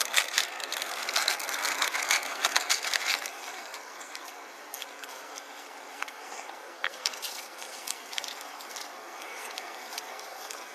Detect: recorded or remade remade